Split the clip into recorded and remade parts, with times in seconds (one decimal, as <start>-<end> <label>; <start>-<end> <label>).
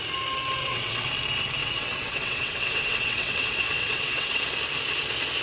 0.0-0.6 recorded; 0.6-1.1 remade; 1.1-1.6 recorded; 1.6-4.4 remade; 4.4-5.4 recorded